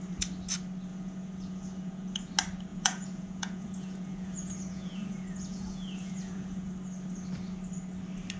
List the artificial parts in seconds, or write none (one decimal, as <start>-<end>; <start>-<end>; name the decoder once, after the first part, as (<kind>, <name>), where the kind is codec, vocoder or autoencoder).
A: 0.9-2.3 (vocoder, Vocos); 2.7-6.7